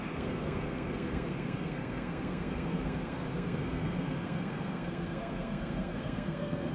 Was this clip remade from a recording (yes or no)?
yes